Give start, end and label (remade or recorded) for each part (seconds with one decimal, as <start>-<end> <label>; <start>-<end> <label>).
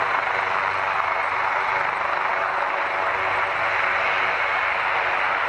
0.0-5.5 recorded